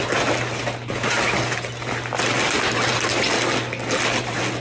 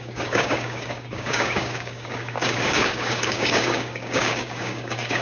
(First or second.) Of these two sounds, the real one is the first